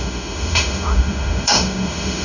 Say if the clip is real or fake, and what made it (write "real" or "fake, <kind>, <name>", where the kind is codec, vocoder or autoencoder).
fake, autoencoder, DAC-VAE